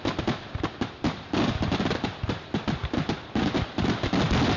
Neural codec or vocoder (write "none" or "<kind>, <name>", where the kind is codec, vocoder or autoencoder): none